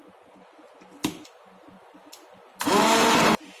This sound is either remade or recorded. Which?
recorded